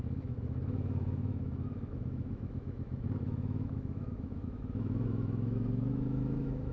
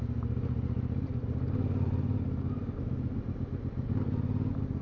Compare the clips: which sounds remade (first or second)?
first